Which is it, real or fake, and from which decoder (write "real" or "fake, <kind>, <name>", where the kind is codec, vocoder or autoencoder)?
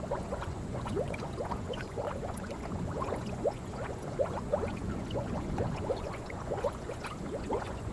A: fake, vocoder, Vocos